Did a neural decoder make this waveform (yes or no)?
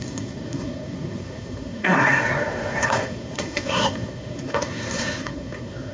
yes